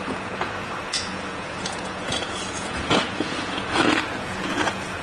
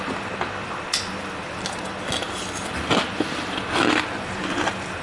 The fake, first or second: first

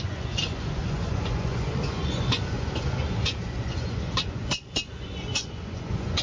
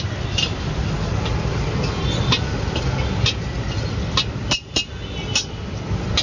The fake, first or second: first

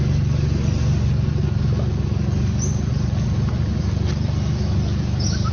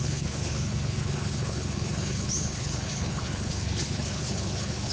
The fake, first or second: second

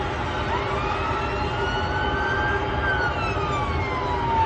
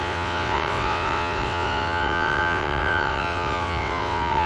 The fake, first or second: second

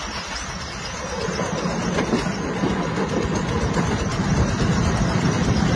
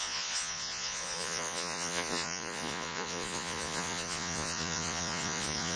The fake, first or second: second